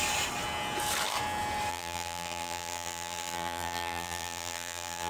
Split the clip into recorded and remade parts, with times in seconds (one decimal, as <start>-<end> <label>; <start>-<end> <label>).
0.0-1.7 recorded; 1.7-5.1 remade